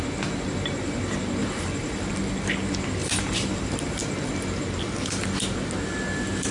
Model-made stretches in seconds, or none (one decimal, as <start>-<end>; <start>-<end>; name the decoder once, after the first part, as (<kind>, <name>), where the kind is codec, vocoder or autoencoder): 1.4-2.1 (vocoder, BigVGAN v2); 3.0-4.0